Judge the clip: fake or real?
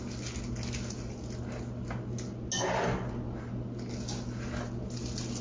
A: real